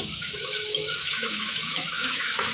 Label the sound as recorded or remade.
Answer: remade